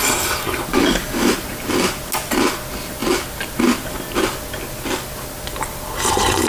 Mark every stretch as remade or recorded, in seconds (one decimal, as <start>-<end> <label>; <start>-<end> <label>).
0.0-0.7 recorded; 0.7-1.3 remade; 1.3-6.5 recorded